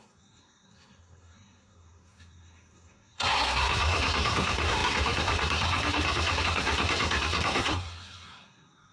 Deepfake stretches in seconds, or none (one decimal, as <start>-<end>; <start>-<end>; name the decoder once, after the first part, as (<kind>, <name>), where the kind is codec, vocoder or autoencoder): 0.0-8.9 (codec, SNAC)